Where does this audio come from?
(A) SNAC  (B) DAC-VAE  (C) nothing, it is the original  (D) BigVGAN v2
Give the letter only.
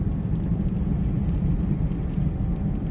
D